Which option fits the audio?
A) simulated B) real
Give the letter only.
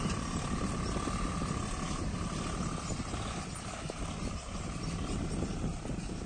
B